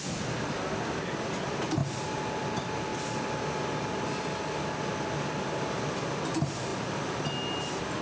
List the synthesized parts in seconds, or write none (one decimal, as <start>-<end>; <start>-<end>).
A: none